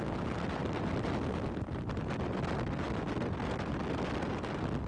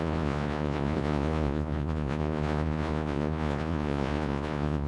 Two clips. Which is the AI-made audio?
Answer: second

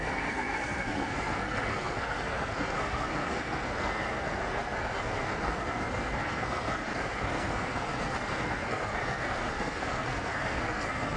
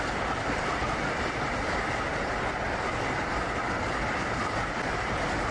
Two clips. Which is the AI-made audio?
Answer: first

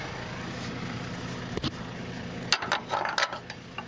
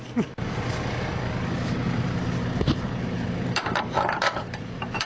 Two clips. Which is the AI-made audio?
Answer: second